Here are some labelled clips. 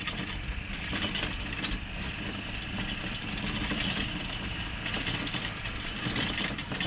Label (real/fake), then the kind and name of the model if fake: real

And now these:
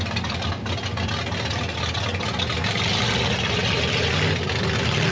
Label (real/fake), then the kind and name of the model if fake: real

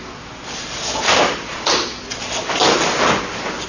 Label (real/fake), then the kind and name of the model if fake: real